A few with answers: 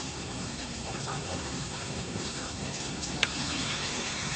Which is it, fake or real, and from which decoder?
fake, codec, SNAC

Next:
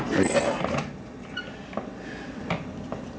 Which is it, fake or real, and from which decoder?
real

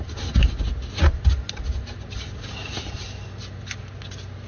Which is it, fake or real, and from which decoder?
real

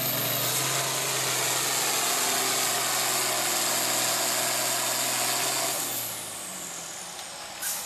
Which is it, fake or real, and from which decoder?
real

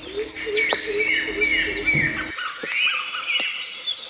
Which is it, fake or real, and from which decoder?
real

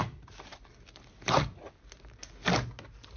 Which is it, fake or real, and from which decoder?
real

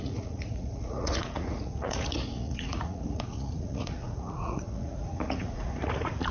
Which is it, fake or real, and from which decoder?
fake, vocoder, Vocos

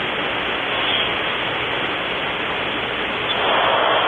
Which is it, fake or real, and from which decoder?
real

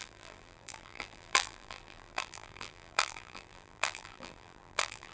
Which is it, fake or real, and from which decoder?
fake, vocoder, BigVGAN v2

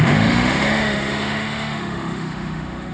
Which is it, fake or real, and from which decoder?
fake, autoencoder, DAC-VAE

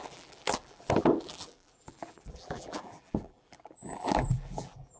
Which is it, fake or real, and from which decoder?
fake, vocoder, BigVGAN v2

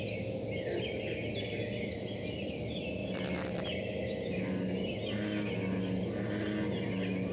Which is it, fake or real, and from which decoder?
real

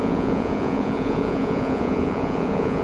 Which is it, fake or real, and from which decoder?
fake, vocoder, Vocos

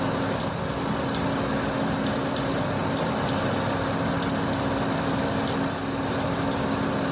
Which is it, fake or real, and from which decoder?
real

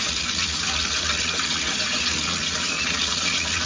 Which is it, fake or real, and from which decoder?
fake, vocoder, Vocos